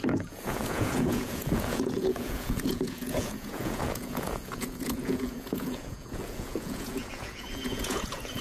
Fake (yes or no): yes